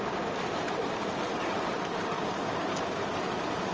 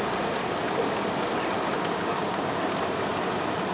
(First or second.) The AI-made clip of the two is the first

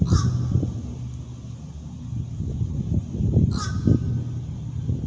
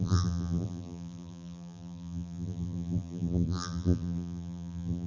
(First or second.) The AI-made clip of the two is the second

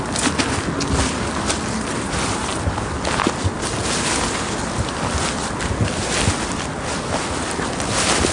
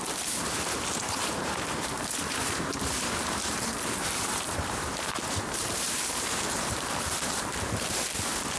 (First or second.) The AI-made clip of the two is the second